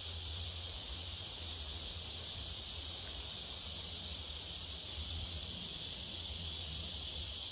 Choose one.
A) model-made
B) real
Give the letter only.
A